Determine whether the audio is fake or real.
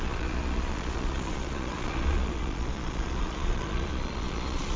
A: fake